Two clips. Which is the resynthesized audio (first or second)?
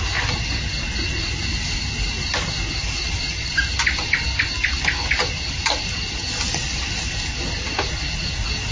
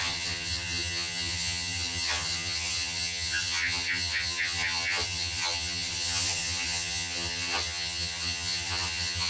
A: second